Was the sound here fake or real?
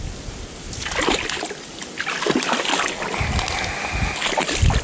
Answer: real